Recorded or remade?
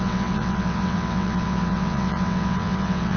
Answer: remade